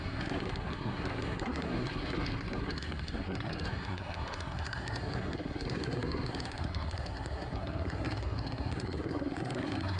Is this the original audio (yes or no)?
no